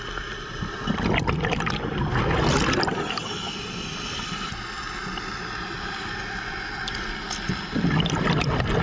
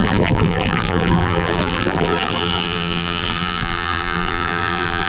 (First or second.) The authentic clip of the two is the first